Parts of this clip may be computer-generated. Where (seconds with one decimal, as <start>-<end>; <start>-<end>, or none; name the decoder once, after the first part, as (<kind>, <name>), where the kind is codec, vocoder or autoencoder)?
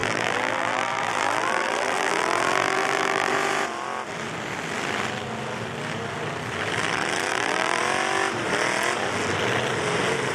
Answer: 0.0-3.3 (vocoder, BigVGAN v2); 7.3-7.8